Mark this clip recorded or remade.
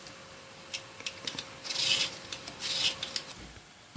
recorded